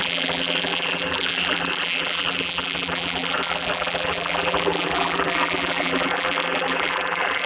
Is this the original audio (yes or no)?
no